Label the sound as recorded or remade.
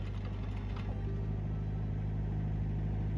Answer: recorded